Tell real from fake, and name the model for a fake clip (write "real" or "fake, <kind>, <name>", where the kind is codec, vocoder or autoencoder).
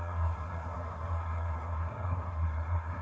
fake, codec, SNAC